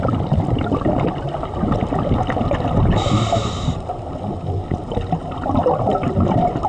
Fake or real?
real